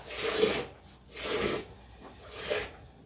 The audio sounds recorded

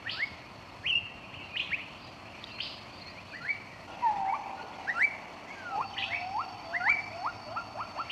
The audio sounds recorded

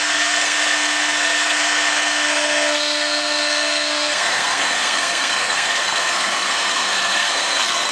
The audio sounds remade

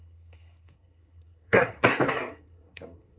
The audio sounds remade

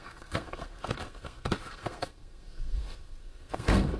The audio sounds remade